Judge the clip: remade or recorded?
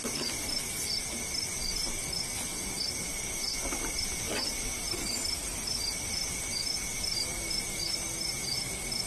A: recorded